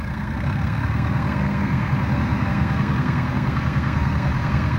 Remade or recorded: remade